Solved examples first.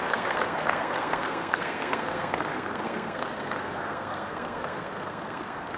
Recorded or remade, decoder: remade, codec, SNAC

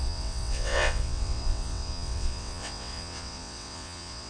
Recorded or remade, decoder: remade, vocoder, WaveNeXt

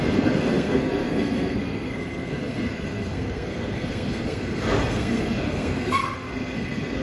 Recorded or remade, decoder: remade, codec, SNAC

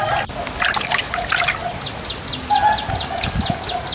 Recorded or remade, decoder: recorded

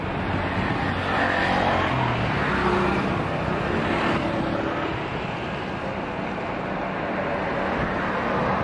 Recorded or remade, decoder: recorded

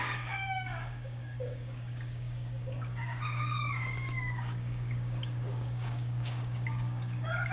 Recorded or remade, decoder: remade, codec, DAC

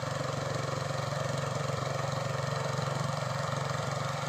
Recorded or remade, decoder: remade, vocoder, BigVGAN v2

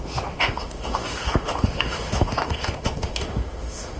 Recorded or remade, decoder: remade, autoencoder, DAC-VAE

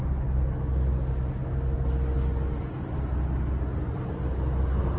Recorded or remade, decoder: recorded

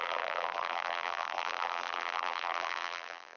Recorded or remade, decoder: remade, vocoder, BigVGAN v2